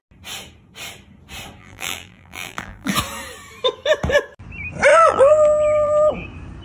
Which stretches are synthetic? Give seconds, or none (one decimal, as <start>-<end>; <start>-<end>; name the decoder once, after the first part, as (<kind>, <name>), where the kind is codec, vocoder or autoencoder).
1.6-2.9 (vocoder, BigVGAN v2); 4.9-6.1